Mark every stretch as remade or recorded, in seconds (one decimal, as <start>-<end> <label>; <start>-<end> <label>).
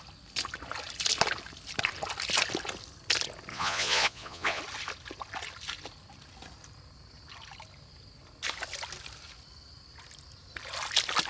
0.0-3.5 recorded; 3.5-4.6 remade; 4.6-11.3 recorded